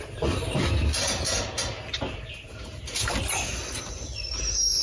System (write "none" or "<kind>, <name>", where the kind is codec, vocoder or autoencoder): none